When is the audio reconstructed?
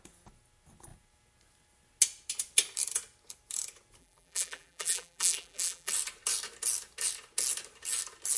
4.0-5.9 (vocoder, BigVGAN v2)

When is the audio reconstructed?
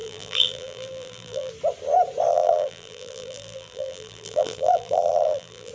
0.0-1.5 (vocoder, BigVGAN v2); 2.3-5.7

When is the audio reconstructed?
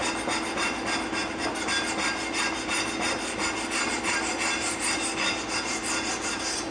none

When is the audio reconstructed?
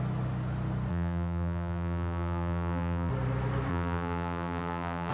0.9-3.1 (vocoder, BigVGAN v2); 3.7-5.1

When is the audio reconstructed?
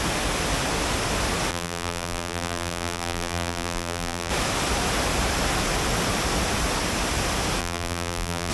1.5-4.3 (vocoder, BigVGAN v2); 7.6-8.5